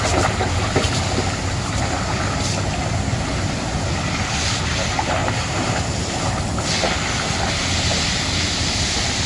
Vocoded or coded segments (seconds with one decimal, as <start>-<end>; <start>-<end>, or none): 5.2-6.3